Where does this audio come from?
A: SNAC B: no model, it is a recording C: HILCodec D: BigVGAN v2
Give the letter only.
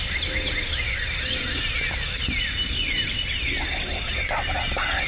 B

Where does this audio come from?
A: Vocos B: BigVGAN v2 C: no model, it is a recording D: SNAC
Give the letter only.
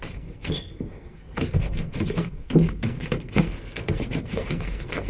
D